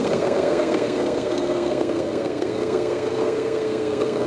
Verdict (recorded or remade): remade